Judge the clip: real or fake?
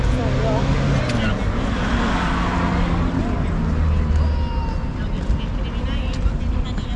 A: real